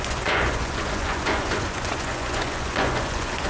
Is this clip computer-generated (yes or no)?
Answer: yes